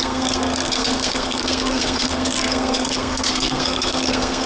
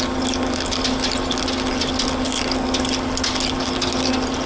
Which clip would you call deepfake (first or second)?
first